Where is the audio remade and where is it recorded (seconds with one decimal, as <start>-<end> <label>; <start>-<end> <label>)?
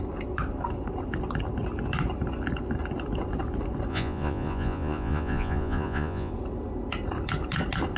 0.0-3.9 recorded; 3.9-6.3 remade; 6.3-8.0 recorded